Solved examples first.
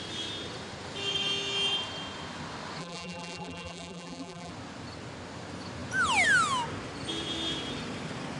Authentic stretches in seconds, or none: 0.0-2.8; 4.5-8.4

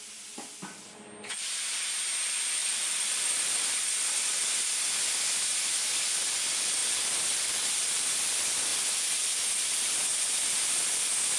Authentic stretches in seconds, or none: 0.0-2.6; 6.3-6.8; 7.7-8.7

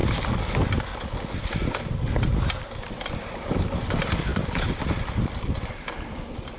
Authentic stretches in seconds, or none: 0.0-1.4

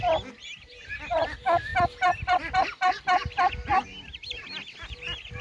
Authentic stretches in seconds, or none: 0.0-3.9

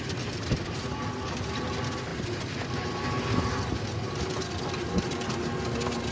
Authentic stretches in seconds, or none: 0.0-6.1